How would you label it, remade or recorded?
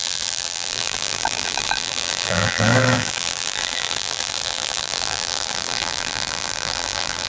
remade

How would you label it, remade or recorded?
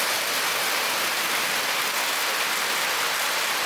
recorded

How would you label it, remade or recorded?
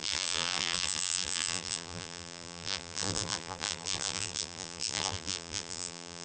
remade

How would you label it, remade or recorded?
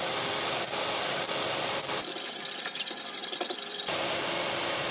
remade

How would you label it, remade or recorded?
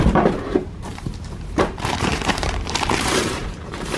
remade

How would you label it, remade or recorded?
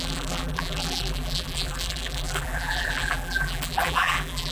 remade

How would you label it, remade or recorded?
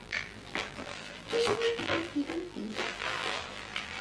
remade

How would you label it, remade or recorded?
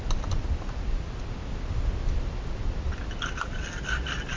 recorded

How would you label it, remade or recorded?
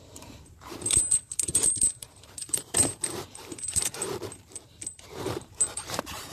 remade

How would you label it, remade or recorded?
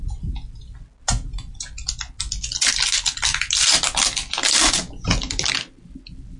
recorded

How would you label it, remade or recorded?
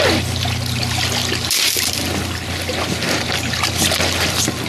recorded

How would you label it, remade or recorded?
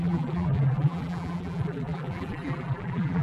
remade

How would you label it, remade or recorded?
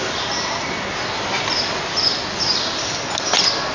recorded